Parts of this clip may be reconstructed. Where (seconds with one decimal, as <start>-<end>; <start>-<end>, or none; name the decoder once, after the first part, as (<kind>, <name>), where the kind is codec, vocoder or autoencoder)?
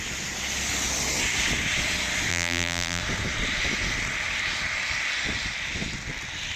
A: 2.3-3.0 (vocoder, BigVGAN v2)